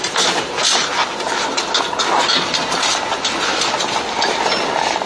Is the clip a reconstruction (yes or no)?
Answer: no